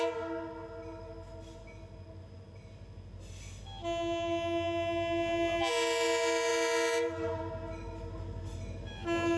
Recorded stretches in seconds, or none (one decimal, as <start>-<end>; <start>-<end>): 0.0-9.4